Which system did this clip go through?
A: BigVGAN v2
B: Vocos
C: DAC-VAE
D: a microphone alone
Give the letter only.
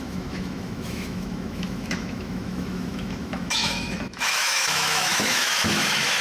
C